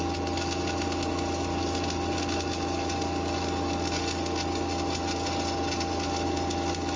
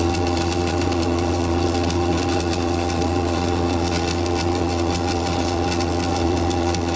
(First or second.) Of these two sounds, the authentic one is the first